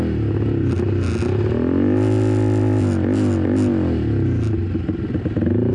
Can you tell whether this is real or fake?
real